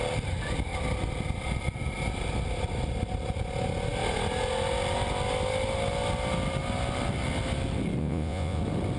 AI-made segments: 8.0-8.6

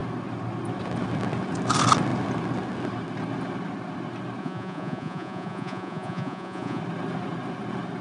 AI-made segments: 4.4-6.8

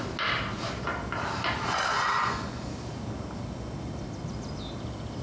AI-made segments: 1.9-2.7

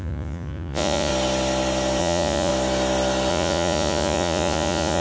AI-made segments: 0.0-1.1; 2.0-2.5; 3.3-5.0

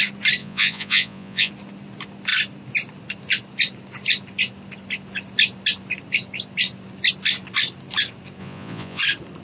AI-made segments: 0.4-1.5; 8.4-9.0

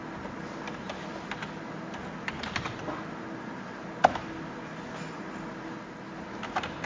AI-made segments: none

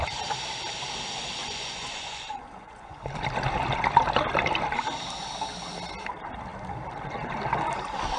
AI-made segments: 1.4-3.0